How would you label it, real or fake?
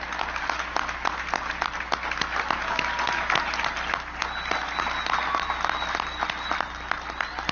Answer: real